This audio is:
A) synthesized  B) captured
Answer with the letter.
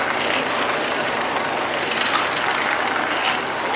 B